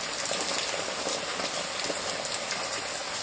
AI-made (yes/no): no